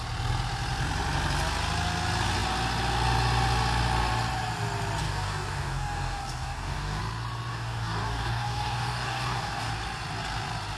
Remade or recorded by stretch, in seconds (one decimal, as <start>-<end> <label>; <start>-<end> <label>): 0.0-5.0 recorded; 5.0-7.0 remade; 7.0-7.5 recorded; 7.5-9.7 remade; 9.7-10.8 recorded